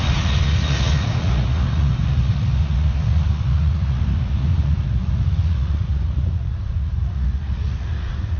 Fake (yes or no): yes